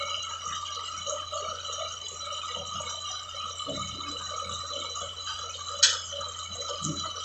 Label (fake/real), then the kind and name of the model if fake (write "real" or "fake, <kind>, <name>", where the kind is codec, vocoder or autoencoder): real